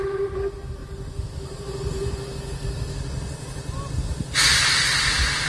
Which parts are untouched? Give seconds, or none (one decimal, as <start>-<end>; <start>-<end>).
0.0-5.5